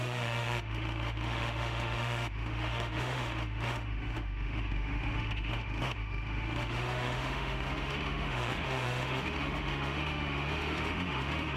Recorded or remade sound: remade